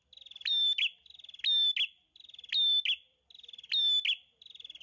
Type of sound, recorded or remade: recorded